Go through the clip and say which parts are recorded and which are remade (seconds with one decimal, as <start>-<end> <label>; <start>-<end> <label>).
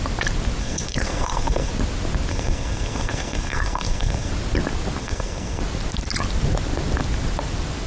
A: 0.0-0.6 recorded; 0.6-1.7 remade; 1.7-2.3 recorded; 2.3-4.3 remade; 4.3-5.0 recorded; 5.0-5.6 remade; 5.6-7.9 recorded